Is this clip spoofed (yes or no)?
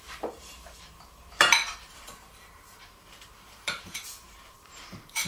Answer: yes